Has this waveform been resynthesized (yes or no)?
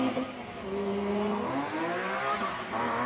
no